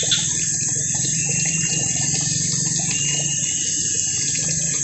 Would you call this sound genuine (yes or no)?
yes